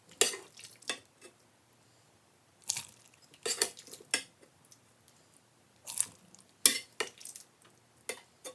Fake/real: real